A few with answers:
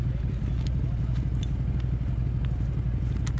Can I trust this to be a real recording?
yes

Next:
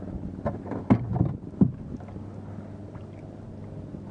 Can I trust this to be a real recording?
yes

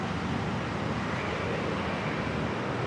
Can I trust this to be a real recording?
yes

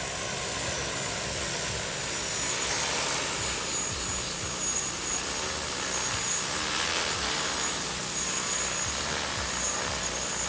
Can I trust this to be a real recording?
yes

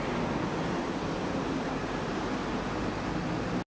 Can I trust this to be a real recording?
yes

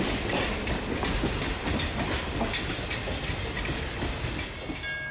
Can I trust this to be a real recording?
yes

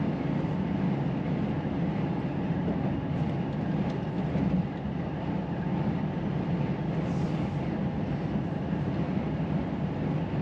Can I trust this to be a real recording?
yes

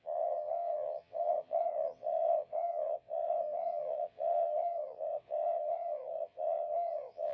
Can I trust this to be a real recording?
no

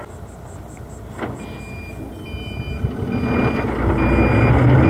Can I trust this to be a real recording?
yes